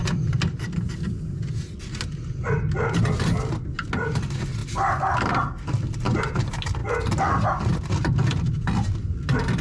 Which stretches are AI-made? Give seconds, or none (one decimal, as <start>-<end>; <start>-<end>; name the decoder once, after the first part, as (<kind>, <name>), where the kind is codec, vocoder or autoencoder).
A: 4.6-5.3 (vocoder, BigVGAN v2); 6.8-7.5